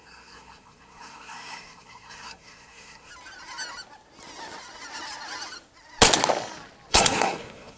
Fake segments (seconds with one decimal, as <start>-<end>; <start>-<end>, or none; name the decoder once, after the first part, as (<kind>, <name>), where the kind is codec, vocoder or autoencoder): 0.0-3.1 (codec, SNAC); 6.9-7.8